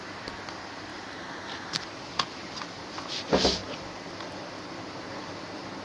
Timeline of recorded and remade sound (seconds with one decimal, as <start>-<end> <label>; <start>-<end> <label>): 0.0-5.8 recorded